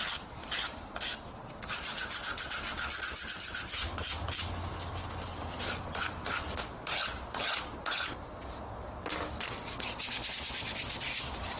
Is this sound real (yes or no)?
yes